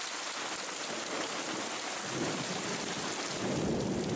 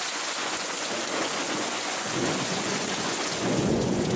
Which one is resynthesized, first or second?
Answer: second